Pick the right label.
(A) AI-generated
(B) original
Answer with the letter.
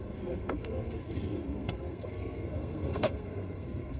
A